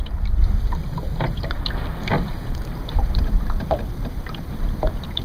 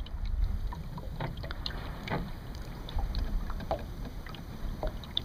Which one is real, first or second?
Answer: first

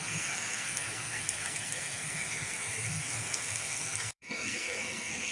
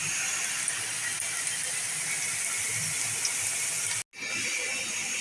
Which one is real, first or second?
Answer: second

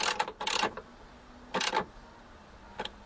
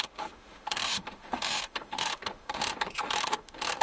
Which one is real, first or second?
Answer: first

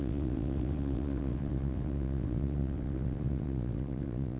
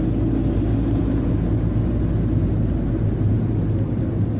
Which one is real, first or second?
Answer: second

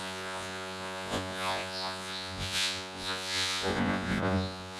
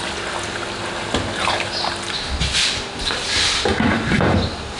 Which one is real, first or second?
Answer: second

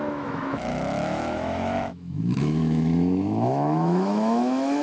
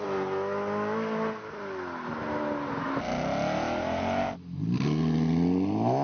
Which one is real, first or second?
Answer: second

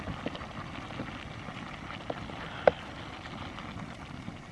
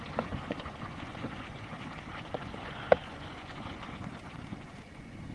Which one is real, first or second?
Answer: first